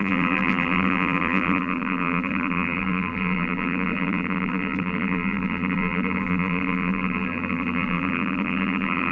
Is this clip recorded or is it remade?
remade